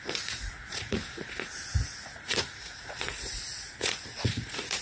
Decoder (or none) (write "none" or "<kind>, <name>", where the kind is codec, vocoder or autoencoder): vocoder, Vocos